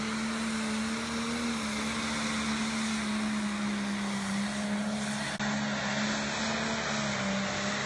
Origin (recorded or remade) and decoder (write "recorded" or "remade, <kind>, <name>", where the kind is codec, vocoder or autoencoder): recorded